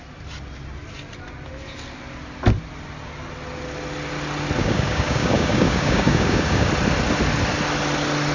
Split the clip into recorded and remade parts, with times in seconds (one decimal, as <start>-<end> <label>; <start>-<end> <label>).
0.0-4.6 recorded; 4.6-6.7 remade; 6.7-8.3 recorded

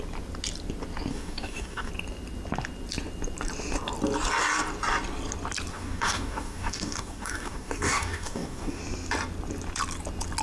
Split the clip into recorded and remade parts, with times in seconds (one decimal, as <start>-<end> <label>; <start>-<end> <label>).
0.0-1.1 recorded; 1.1-1.9 remade; 1.9-5.7 recorded; 5.7-8.8 remade; 8.8-10.4 recorded

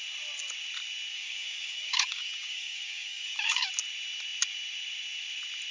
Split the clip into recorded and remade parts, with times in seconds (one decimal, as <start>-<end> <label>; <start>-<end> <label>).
0.0-1.1 recorded; 1.1-3.7 remade; 3.7-5.7 recorded

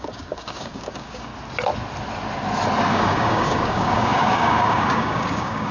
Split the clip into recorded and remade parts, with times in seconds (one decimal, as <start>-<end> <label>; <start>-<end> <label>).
0.0-1.3 remade; 1.3-2.9 recorded; 2.9-5.7 remade